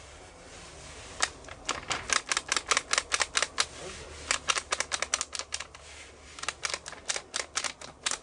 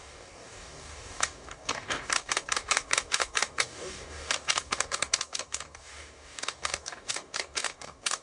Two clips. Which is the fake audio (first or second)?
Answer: second